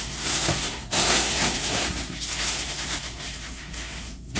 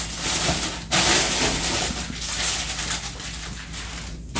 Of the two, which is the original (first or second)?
second